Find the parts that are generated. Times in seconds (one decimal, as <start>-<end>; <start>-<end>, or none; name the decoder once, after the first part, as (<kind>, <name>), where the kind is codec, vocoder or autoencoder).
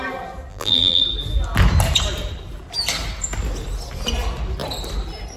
0.5-1.0 (vocoder, BigVGAN v2)